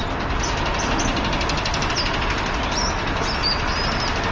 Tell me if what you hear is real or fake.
real